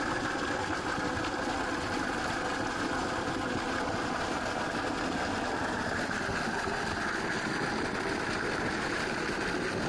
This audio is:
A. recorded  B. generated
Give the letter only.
A